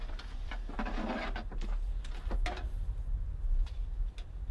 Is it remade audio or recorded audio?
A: recorded